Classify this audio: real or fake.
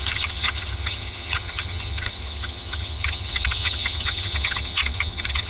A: fake